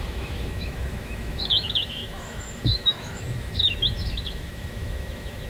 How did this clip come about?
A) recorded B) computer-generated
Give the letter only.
B